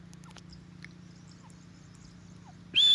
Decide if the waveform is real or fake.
real